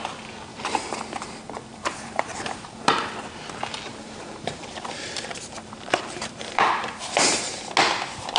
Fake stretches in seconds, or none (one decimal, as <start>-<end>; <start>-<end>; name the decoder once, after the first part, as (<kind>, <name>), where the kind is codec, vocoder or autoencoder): 0.5-1.0 (vocoder, BigVGAN v2); 1.7-3.1; 3.9-7.6

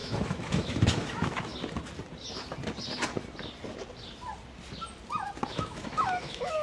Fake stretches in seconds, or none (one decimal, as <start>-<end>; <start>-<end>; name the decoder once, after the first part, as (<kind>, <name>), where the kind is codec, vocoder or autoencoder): 0.0-1.5 (autoencoder, DAC-VAE); 5.5-6.6

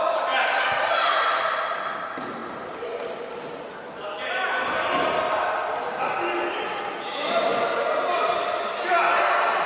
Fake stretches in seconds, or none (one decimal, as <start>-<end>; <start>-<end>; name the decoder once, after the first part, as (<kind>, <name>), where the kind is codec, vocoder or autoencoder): none